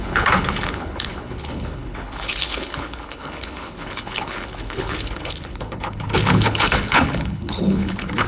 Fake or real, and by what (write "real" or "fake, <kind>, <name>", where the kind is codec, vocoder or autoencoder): fake, codec, HILCodec